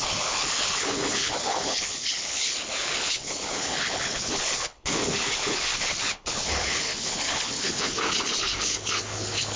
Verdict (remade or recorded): remade